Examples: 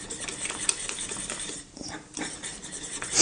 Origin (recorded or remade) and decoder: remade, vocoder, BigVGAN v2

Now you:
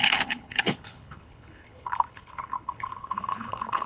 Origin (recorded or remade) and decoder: remade, codec, HILCodec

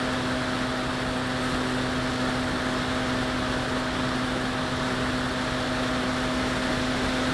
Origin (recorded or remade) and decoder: recorded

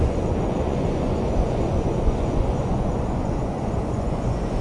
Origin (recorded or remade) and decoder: remade, vocoder, Vocos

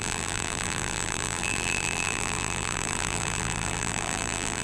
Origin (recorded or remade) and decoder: remade, vocoder, BigVGAN v2